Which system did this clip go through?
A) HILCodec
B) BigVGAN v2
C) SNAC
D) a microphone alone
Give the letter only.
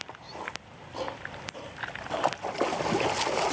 D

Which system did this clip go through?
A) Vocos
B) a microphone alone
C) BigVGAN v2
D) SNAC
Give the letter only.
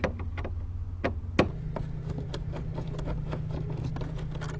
B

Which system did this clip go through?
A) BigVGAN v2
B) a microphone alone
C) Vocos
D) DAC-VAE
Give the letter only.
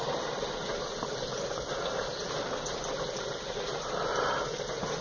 B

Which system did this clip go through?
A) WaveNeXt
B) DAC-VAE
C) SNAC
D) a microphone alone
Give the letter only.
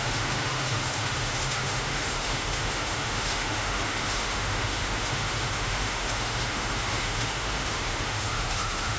B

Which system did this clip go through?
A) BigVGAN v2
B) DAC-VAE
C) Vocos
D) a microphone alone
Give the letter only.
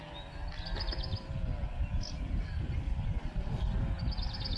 D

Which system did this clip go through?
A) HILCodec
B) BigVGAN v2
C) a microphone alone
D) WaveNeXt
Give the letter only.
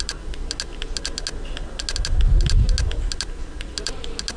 C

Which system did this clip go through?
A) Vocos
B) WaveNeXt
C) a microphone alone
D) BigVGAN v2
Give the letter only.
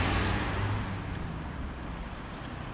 C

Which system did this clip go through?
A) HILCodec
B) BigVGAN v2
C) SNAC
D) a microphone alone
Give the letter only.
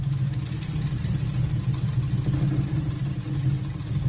D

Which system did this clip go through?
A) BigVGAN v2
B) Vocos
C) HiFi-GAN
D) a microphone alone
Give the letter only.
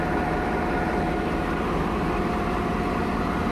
D